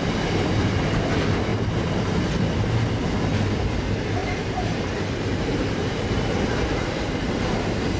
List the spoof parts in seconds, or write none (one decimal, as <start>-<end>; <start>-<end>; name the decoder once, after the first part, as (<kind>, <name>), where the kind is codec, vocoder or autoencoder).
1.5-2.5 (vocoder, BigVGAN v2); 4.2-7.1